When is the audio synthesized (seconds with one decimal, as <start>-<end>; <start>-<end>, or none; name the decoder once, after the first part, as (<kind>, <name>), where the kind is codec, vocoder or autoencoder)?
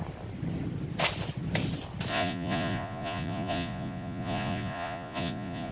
2.1-5.7 (vocoder, Vocos)